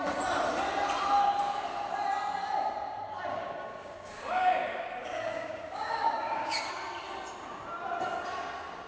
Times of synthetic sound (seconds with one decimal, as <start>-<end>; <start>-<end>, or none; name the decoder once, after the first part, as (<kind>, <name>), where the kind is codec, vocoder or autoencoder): 3.3-6.7 (codec, DAC)